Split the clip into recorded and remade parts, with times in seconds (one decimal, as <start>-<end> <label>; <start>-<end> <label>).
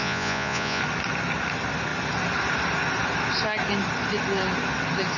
0.0-0.8 remade; 0.8-5.2 recorded